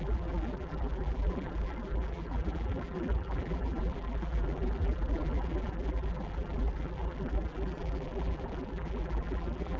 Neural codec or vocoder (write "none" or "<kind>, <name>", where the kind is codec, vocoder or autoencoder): vocoder, BigVGAN v2